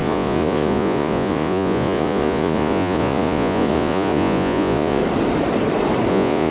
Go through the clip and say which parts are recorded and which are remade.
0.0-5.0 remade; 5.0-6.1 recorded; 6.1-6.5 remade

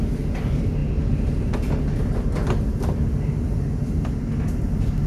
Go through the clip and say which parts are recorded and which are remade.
0.0-5.1 recorded

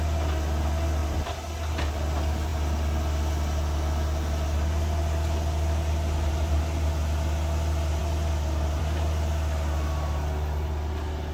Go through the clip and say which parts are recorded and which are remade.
0.0-11.3 recorded

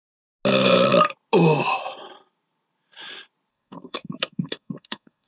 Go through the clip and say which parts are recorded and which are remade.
0.0-3.5 recorded; 3.5-5.3 remade